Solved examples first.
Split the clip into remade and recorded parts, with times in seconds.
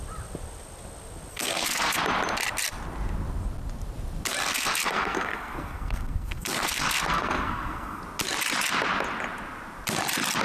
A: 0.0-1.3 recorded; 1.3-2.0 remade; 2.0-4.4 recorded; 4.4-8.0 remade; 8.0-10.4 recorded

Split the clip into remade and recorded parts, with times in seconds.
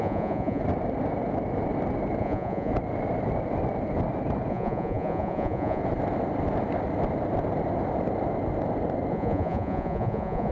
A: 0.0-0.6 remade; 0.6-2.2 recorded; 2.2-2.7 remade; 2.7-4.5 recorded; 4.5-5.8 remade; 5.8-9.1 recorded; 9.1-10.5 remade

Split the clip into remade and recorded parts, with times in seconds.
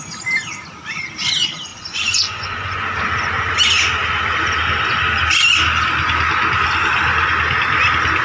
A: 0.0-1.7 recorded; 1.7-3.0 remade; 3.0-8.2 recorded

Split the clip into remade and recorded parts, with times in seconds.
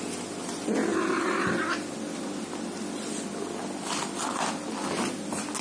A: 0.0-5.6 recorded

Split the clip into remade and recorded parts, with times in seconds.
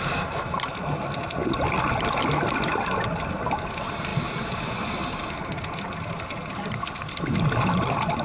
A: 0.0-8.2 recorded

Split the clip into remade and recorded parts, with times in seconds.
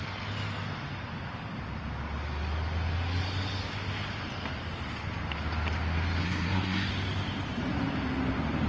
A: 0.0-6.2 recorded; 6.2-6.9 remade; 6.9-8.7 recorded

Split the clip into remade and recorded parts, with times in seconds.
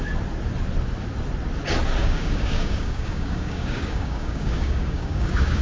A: 0.0-2.0 recorded; 2.0-5.6 remade